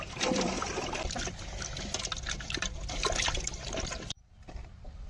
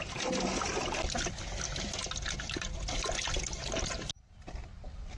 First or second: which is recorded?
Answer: second